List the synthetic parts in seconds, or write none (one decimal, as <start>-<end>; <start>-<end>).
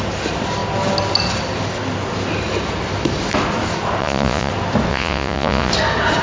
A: 4.0-4.5; 4.9-5.7